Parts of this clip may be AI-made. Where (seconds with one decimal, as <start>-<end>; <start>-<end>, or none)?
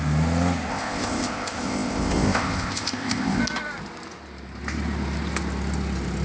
0.7-3.4